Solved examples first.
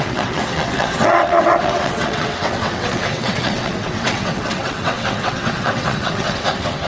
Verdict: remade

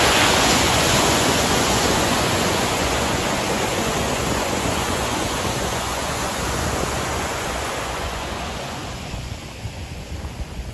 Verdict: remade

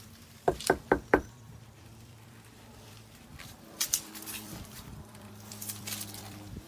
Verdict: remade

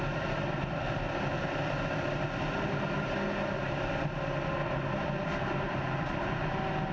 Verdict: recorded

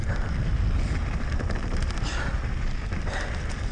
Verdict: recorded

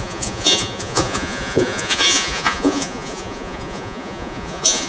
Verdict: remade